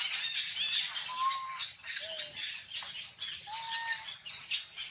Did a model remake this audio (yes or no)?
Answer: no